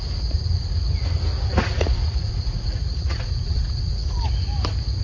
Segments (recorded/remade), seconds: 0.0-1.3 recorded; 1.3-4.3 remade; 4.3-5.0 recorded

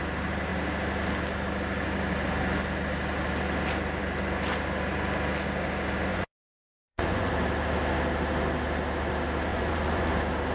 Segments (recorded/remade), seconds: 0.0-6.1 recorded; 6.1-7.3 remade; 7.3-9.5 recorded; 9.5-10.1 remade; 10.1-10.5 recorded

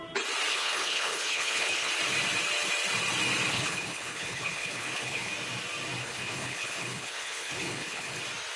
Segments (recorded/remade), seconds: 0.0-0.5 recorded; 0.5-1.9 remade; 1.9-3.5 recorded; 3.5-5.3 remade; 5.3-6.0 recorded; 6.0-8.2 remade; 8.2-8.6 recorded